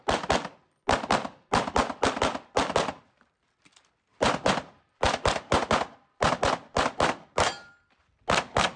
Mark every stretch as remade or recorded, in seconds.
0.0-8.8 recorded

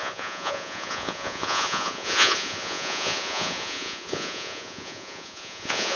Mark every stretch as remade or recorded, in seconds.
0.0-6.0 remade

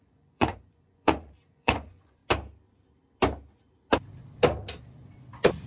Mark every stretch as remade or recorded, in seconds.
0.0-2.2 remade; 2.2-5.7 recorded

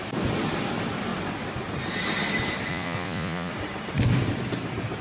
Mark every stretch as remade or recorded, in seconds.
0.0-2.7 recorded; 2.7-3.5 remade; 3.5-5.0 recorded

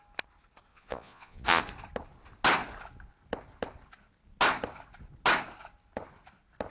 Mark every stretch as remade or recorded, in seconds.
0.0-0.7 recorded; 0.7-1.6 remade; 1.6-6.7 recorded

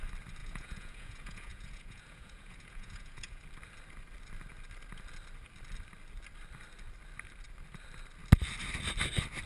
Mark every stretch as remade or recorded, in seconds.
0.0-0.4 recorded; 0.4-3.4 remade; 3.4-9.5 recorded

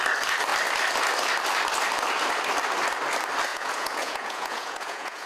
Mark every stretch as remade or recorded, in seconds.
0.0-3.5 recorded; 3.5-5.3 remade